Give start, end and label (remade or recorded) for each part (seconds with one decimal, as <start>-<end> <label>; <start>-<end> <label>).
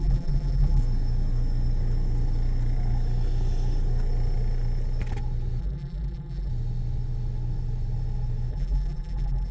0.0-0.8 remade; 0.8-5.6 recorded; 5.6-6.5 remade; 6.5-8.5 recorded; 8.5-9.5 remade